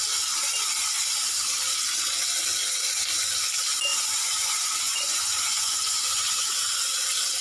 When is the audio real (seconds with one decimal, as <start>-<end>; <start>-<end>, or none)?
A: 0.0-3.9; 6.6-7.4